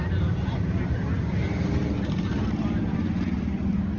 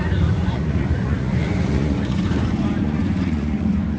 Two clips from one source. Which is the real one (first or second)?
first